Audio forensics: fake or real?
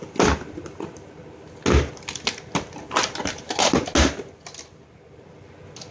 real